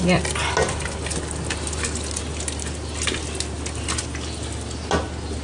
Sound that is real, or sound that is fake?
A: real